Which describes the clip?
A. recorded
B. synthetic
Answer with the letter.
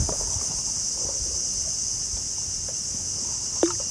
A